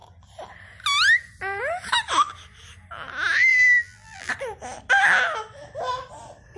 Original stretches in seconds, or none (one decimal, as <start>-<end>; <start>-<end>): 0.0-3.5; 4.3-6.6